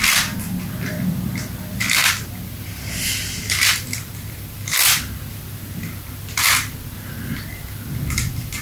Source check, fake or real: fake